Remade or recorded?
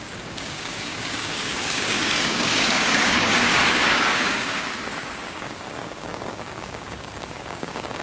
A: remade